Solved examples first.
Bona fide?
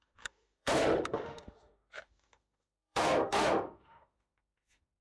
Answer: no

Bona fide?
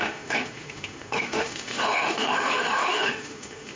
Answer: no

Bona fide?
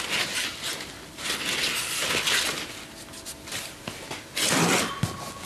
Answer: yes